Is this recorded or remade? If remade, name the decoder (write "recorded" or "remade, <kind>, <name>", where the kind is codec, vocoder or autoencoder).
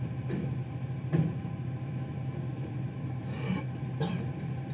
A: recorded